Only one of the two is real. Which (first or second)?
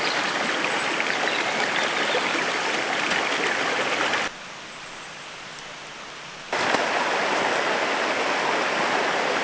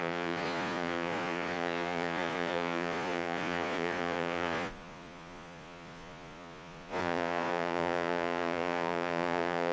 first